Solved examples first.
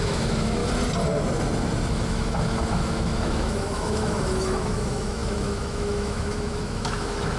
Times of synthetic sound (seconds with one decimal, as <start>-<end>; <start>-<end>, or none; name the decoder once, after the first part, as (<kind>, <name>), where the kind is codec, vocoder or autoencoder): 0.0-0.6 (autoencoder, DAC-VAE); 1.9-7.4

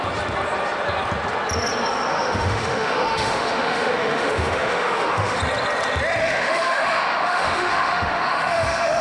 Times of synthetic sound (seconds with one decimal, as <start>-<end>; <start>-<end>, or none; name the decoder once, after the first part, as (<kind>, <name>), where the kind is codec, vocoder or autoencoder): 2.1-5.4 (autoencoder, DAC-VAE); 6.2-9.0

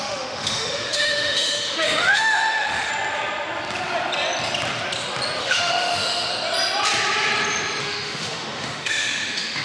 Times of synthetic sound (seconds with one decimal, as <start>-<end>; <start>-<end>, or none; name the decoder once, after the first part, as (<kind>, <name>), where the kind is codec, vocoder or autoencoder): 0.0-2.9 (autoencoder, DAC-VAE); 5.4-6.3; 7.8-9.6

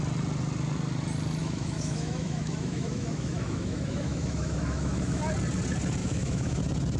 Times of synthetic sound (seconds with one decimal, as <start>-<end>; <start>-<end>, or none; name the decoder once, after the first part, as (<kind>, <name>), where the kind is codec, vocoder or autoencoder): 1.4-5.2 (autoencoder, DAC-VAE); 6.0-6.6

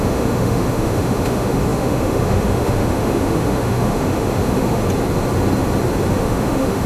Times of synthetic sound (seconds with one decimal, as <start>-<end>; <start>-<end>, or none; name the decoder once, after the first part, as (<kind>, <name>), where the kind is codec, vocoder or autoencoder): 0.0-4.8 (autoencoder, DAC-VAE); 6.1-6.9

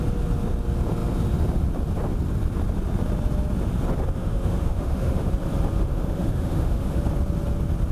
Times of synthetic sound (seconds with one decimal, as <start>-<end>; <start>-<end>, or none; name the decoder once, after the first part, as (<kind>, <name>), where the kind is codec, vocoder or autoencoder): 4.2-5.3 (autoencoder, DAC-VAE); 5.9-7.0

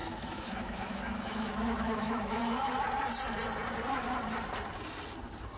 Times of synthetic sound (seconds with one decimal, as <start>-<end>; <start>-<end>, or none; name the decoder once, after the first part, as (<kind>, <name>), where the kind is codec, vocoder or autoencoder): 0.0-2.7 (autoencoder, DAC-VAE)